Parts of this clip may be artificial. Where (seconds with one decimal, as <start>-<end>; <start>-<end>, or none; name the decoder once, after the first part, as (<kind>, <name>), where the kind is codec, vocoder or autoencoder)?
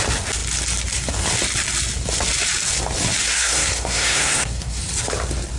3.2-4.8 (codec, SNAC)